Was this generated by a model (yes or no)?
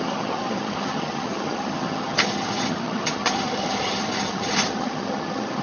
yes